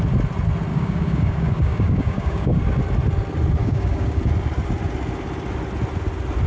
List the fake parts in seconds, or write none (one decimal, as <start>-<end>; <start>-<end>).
0.7-2.6; 3.6-4.2